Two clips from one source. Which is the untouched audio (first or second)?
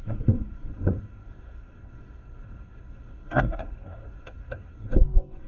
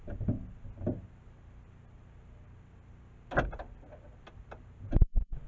second